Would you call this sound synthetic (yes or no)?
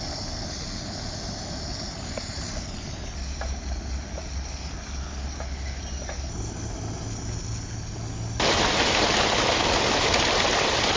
no